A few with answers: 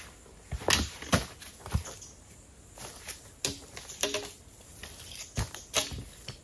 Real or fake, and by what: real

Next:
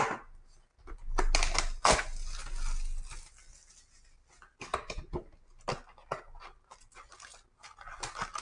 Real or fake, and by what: real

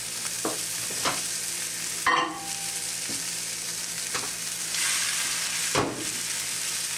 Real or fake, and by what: real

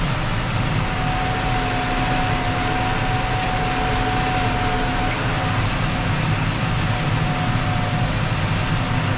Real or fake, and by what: real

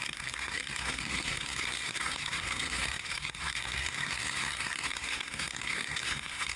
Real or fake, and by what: fake, codec, SNAC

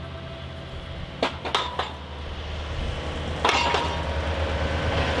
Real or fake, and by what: real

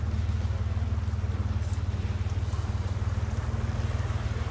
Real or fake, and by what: real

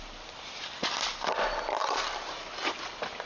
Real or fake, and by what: real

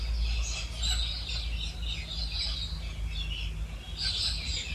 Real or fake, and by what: real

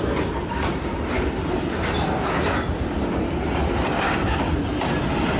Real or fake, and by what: real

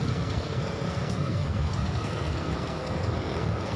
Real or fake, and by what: fake, codec, SNAC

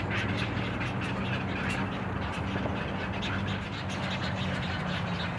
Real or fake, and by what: real